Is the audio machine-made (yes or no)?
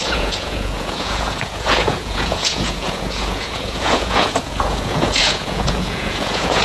yes